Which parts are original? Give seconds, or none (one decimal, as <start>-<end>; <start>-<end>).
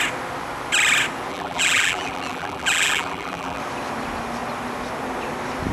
0.0-1.3; 3.6-5.7